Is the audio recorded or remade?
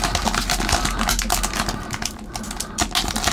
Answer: recorded